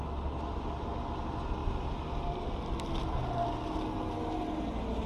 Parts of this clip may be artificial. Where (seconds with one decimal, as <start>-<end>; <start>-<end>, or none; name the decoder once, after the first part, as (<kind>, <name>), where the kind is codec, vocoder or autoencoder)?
none